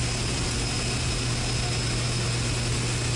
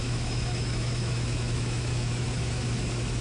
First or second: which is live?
first